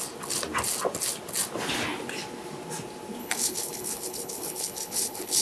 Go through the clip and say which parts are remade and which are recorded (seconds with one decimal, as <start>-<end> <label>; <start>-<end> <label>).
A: 0.0-3.2 recorded; 3.2-5.4 remade